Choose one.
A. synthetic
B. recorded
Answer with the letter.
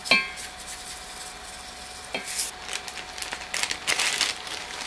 B